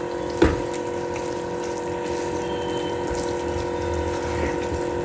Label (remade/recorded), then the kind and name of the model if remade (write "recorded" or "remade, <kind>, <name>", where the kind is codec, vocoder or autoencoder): recorded